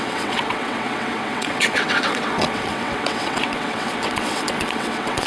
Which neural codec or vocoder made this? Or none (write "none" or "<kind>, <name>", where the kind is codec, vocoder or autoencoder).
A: vocoder, WaveNeXt